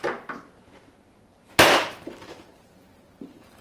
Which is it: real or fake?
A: real